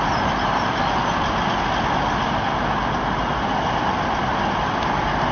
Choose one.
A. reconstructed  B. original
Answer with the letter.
B